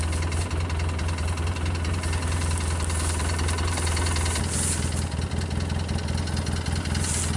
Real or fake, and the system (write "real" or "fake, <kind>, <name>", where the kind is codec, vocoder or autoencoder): real